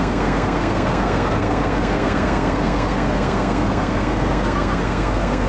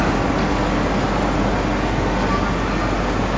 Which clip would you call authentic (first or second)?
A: second